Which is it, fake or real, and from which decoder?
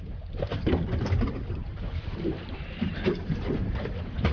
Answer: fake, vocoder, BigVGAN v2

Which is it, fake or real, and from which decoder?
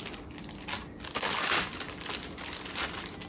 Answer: real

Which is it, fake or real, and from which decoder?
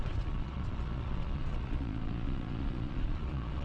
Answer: fake, vocoder, Vocos